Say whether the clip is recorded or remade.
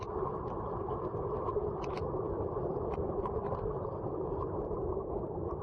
remade